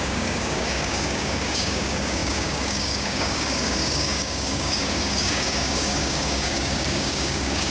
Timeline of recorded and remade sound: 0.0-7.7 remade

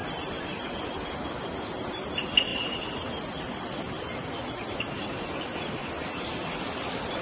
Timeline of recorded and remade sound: 0.0-7.2 recorded

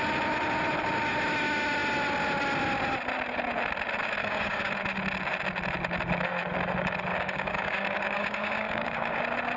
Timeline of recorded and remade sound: 0.0-4.2 recorded; 4.2-4.7 remade; 4.7-7.1 recorded; 7.1-9.2 remade; 9.2-9.6 recorded

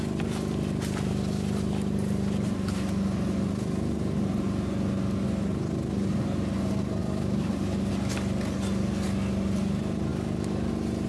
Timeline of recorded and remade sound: 0.0-7.0 recorded; 7.0-7.9 remade; 7.9-10.1 recorded; 10.1-10.7 remade; 10.7-11.1 recorded

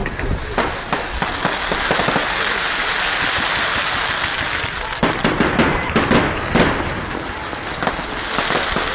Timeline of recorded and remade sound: 0.0-8.9 recorded